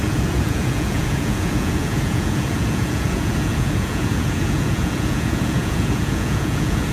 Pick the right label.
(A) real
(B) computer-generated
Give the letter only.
B